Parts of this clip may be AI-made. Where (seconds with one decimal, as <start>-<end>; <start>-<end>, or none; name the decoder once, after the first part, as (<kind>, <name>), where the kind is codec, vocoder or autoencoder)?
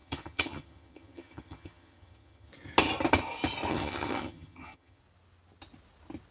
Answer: 0.0-2.5 (vocoder, HiFi-GAN); 3.7-5.0